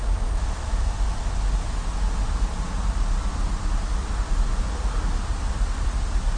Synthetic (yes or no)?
no